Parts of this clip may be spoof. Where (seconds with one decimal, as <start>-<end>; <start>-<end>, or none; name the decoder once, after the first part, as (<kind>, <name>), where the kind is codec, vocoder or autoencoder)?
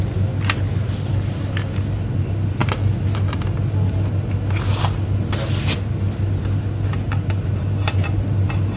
none